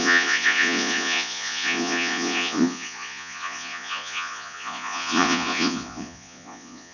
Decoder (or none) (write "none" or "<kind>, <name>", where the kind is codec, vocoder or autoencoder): vocoder, Vocos